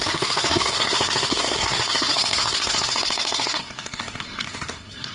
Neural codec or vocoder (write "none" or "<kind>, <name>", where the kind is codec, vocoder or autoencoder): codec, SNAC